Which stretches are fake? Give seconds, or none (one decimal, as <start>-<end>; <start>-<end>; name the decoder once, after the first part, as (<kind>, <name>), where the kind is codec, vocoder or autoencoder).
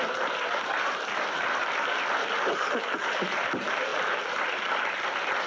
none